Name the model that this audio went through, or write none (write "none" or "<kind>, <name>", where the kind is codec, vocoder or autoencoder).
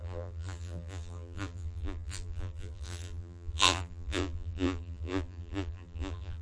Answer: vocoder, BigVGAN v2